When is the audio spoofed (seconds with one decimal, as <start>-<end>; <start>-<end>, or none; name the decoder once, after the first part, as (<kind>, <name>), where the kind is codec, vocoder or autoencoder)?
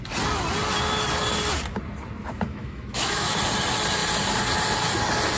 2.3-3.4 (autoencoder, DAC-VAE)